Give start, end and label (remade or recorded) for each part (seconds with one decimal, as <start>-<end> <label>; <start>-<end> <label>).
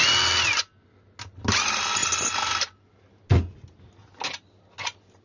0.0-5.2 recorded